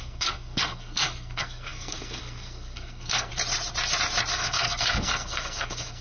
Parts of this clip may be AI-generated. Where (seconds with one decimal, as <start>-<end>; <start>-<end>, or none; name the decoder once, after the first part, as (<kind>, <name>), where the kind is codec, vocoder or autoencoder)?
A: 0.0-3.3 (codec, SNAC); 4.3-6.0